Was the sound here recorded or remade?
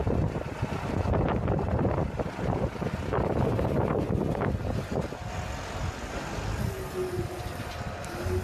recorded